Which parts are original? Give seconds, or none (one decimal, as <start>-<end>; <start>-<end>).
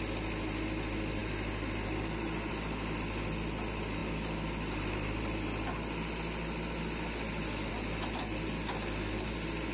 0.0-9.7